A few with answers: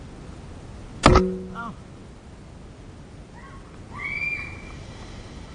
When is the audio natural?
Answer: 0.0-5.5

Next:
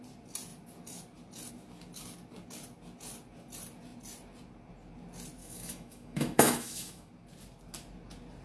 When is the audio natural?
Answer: 0.0-5.4; 7.1-8.4